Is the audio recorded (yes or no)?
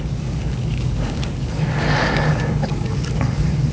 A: no